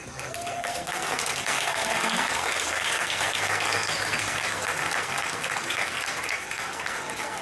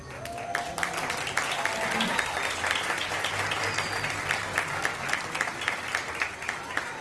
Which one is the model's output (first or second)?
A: first